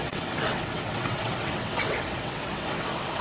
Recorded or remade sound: remade